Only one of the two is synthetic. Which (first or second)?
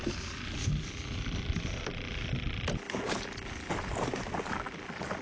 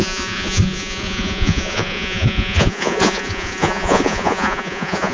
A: second